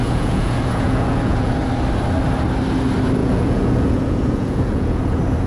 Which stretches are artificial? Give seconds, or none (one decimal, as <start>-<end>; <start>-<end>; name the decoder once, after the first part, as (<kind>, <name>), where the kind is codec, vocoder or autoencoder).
0.0-1.5 (vocoder, Vocos); 3.2-5.0